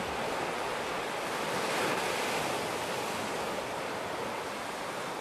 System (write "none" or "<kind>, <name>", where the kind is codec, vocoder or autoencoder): none